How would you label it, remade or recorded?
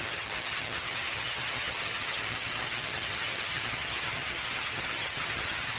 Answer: remade